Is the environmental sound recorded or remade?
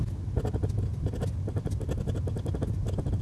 recorded